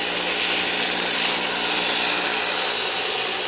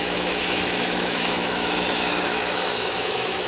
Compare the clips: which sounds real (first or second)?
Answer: first